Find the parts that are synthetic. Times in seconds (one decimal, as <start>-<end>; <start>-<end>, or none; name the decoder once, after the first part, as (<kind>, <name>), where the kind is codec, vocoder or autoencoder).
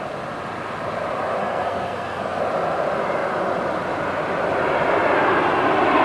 1.4-2.4 (codec, SNAC)